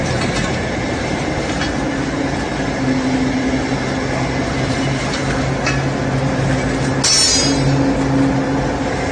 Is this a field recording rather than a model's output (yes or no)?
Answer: yes